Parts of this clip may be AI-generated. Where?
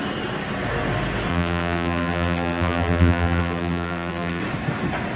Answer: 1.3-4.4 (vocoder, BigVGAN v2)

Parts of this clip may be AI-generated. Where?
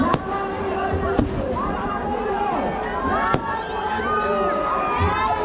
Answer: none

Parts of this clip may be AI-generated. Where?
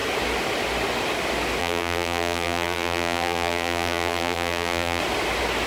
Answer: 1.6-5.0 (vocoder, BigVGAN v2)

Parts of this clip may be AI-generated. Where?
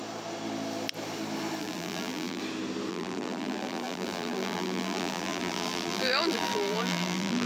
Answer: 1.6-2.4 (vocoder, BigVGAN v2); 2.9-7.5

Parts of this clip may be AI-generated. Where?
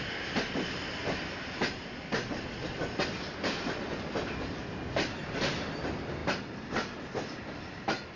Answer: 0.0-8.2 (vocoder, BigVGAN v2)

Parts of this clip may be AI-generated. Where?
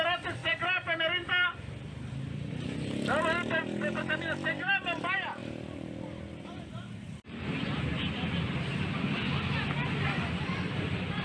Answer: 5.4-8.9 (vocoder, BigVGAN v2)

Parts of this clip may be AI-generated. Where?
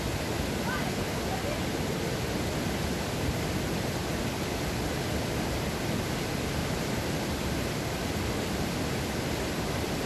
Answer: 6.6-7.1 (vocoder, BigVGAN v2)